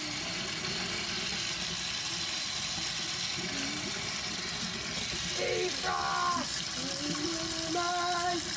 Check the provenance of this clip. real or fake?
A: real